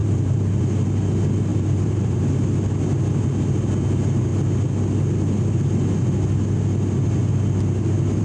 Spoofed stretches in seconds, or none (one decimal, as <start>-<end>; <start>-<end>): 0.0-0.6; 1.5-2.3